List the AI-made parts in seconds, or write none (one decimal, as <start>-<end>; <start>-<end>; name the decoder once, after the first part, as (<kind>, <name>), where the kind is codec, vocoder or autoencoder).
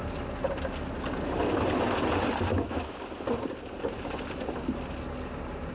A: 2.5-3.0 (autoencoder, DAC-VAE)